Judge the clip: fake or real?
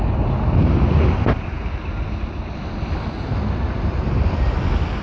real